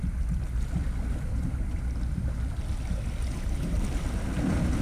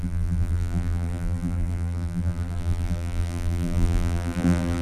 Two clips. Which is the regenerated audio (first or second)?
second